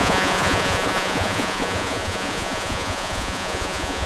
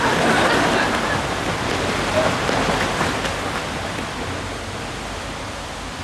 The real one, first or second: second